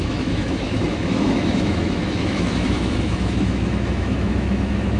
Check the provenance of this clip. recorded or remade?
remade